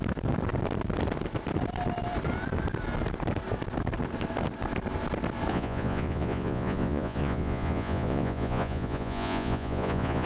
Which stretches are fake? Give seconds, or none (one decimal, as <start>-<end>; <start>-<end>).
5.5-10.3